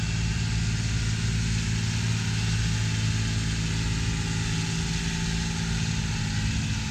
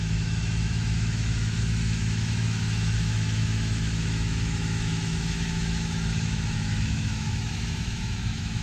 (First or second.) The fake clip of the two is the second